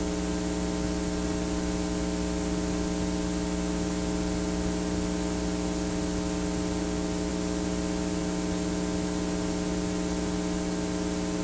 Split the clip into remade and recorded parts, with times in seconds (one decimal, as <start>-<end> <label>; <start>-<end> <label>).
0.0-11.4 recorded